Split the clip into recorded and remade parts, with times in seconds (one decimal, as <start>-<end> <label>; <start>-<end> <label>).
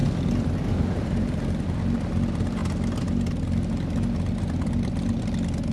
0.0-0.7 recorded; 0.7-2.6 remade; 2.6-5.7 recorded